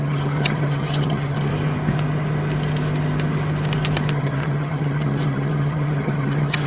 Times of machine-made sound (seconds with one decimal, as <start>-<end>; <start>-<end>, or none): 0.0-1.5; 4.1-6.7